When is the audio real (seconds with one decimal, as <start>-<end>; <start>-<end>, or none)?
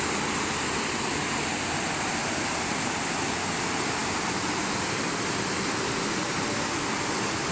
0.0-7.5